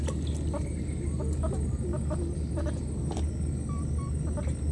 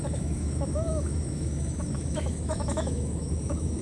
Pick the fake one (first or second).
second